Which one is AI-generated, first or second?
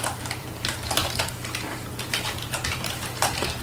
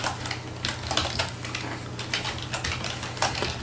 first